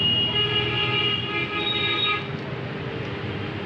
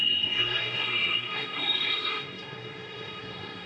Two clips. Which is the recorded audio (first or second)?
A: first